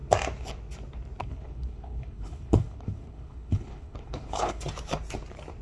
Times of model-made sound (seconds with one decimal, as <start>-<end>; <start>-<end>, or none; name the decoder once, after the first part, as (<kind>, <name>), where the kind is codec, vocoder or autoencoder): 1.2-4.6 (codec, HILCodec)